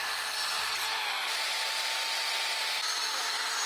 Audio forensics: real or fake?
real